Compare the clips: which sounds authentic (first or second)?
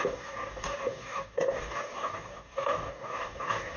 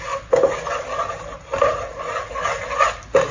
second